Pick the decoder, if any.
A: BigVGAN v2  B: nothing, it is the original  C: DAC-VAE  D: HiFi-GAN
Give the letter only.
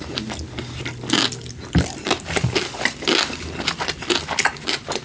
B